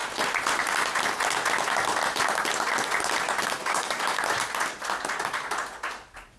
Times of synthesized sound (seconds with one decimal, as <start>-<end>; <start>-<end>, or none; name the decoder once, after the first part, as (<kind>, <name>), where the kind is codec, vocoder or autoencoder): 3.6-4.2 (codec, DAC)